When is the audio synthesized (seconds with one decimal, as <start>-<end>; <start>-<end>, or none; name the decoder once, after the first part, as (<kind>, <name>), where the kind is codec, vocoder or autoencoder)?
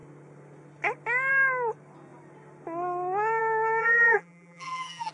3.8-5.1 (vocoder, BigVGAN v2)